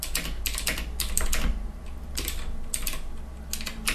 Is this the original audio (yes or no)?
yes